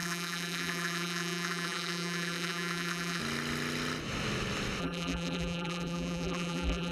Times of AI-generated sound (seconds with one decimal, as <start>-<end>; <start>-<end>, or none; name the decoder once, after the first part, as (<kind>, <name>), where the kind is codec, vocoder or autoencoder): 0.0-3.2 (vocoder, BigVGAN v2); 4.8-6.9